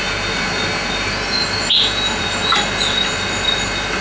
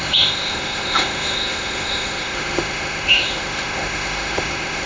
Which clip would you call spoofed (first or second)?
second